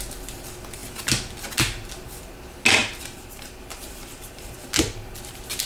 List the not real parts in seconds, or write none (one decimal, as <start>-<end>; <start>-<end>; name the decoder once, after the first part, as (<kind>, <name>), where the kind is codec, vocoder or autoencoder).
2.8-4.7 (vocoder, BigVGAN v2)